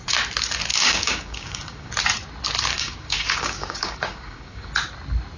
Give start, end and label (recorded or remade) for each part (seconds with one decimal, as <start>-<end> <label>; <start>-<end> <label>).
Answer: 0.0-0.7 recorded; 0.7-1.9 remade; 1.9-2.7 recorded; 2.7-4.7 remade; 4.7-5.4 recorded